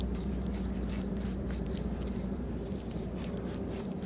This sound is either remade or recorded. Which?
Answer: remade